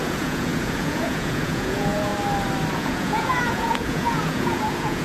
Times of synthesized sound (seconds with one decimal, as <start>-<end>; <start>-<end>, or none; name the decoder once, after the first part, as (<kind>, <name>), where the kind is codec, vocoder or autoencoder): 0.0-2.1 (vocoder, Vocos); 2.7-5.0